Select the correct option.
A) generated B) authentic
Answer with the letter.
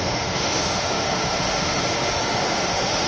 A